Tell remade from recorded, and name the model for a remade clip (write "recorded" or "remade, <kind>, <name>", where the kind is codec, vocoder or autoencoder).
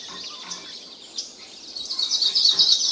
recorded